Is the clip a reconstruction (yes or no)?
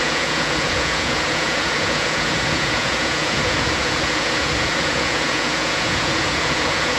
yes